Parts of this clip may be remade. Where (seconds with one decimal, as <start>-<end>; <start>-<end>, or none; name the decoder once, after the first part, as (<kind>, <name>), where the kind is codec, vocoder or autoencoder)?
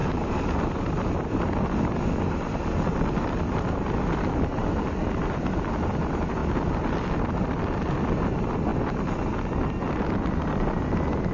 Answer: none